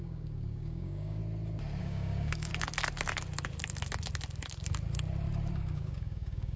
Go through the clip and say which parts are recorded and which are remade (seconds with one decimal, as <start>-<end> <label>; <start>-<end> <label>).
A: 0.0-1.2 remade; 1.2-1.8 recorded; 1.8-2.5 remade; 2.5-5.5 recorded; 5.5-6.6 remade